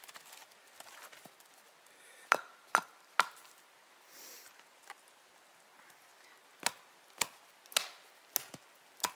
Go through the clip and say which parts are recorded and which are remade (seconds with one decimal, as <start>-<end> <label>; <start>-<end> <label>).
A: 0.0-9.2 recorded